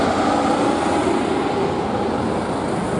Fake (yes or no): no